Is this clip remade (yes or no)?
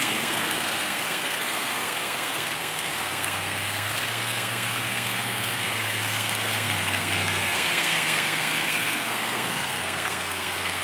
yes